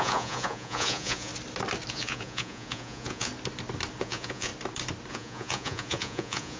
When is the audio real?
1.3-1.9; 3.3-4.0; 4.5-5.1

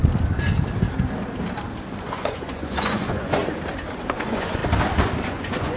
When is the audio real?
0.0-2.0; 3.4-4.0; 4.6-5.3